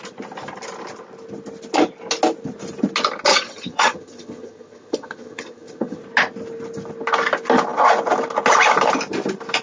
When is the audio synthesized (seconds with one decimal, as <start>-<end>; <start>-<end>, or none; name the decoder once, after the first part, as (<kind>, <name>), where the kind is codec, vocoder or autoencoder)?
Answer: 3.3-6.0 (vocoder, HiFi-GAN)